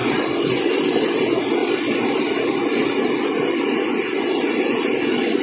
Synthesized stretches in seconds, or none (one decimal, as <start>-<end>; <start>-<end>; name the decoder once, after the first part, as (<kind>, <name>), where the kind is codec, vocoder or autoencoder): none